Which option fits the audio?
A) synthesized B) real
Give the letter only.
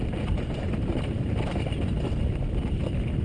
B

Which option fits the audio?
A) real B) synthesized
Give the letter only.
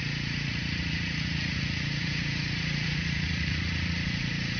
B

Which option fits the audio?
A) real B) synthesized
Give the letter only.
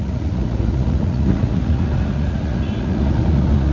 B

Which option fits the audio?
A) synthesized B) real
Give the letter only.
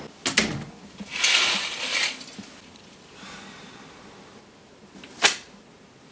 B